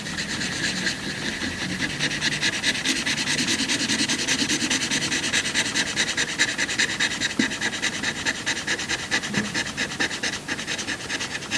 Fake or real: real